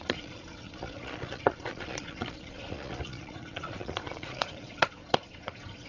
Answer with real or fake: fake